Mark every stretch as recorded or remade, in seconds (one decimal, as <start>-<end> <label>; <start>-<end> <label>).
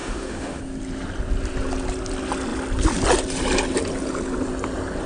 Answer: 0.0-0.6 remade; 0.6-5.1 recorded